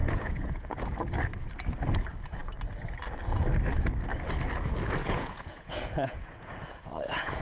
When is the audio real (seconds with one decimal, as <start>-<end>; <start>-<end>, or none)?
0.8-5.0